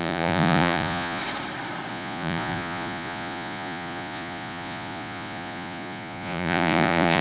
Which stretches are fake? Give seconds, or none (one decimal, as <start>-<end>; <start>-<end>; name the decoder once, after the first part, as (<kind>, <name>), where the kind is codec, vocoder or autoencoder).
0.0-1.2 (vocoder, Vocos); 1.9-7.2